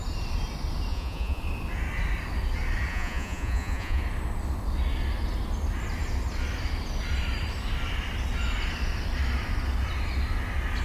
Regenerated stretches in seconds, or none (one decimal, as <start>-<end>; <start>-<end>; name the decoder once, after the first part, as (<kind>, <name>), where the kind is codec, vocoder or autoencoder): 0.9-1.4 (vocoder, Vocos); 2.9-4.0